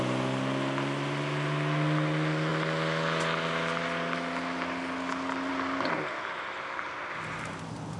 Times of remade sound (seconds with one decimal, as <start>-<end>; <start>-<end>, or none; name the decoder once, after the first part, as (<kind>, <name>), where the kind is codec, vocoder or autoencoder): none